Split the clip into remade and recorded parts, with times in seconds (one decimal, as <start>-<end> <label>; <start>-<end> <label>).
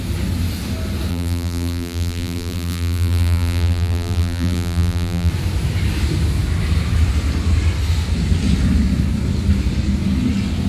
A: 0.0-1.1 recorded; 1.1-5.3 remade; 5.3-10.7 recorded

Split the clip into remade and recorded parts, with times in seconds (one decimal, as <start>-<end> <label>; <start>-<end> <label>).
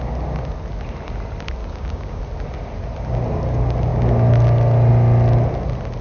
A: 0.0-1.6 recorded; 1.6-2.2 remade; 2.2-6.0 recorded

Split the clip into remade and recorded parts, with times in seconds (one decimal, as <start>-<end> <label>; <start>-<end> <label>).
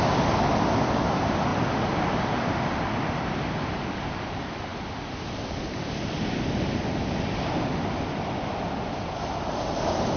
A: 0.0-10.2 recorded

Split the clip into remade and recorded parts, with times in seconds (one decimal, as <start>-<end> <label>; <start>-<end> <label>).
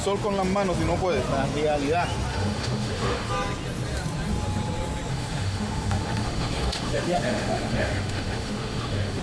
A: 0.0-2.3 recorded; 2.3-3.3 remade; 3.3-5.1 recorded; 5.1-9.2 remade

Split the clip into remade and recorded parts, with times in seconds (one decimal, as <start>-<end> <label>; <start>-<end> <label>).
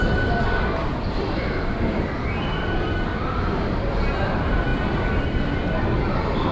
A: 0.0-0.9 recorded; 0.9-3.9 remade; 3.9-6.5 recorded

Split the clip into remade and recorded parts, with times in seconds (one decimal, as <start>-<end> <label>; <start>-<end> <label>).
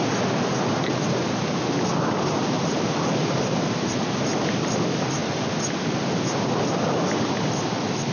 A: 0.0-8.1 recorded